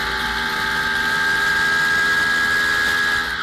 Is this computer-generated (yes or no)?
no